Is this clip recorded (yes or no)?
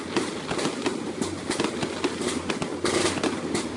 yes